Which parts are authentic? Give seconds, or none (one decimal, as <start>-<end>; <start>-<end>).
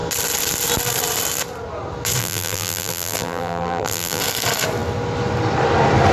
0.0-2.2; 4.2-6.1